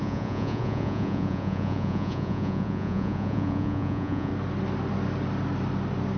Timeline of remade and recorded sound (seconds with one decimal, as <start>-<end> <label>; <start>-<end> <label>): 0.0-4.3 remade; 4.3-6.2 recorded